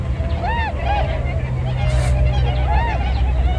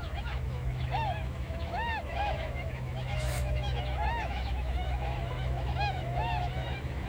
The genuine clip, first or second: first